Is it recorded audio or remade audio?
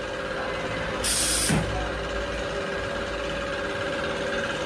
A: recorded